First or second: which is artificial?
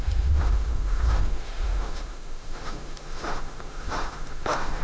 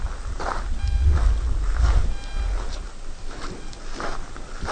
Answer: first